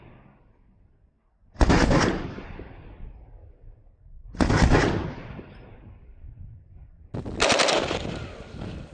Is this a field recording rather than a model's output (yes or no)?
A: yes